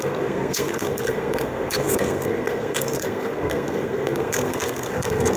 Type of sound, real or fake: fake